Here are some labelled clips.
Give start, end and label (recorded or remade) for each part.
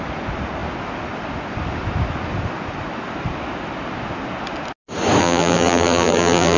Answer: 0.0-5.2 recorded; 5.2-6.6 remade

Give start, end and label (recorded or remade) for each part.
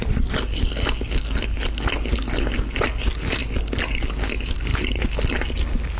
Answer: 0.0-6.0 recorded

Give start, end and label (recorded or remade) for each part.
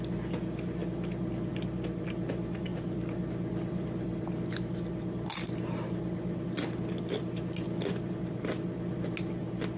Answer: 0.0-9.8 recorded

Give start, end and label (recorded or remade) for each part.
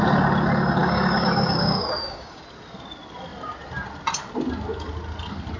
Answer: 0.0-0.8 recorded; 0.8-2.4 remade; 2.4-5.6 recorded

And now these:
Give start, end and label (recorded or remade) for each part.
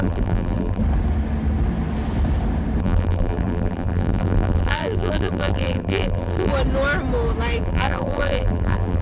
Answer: 0.0-0.8 remade; 0.8-2.8 recorded; 2.8-6.5 remade; 6.5-7.6 recorded; 7.6-9.0 remade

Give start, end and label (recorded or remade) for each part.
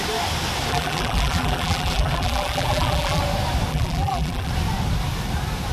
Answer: 0.0-0.7 recorded; 0.7-3.2 remade; 3.2-3.7 recorded; 3.7-4.5 remade; 4.5-5.7 recorded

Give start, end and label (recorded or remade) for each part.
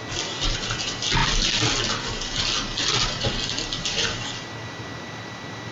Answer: 0.0-5.7 recorded